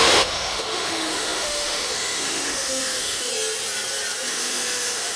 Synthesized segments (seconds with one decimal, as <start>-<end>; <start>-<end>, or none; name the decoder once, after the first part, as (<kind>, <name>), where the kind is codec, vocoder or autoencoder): 0.0-3.3 (autoencoder, DAC-VAE); 4.3-5.2